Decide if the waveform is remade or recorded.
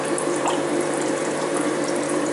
remade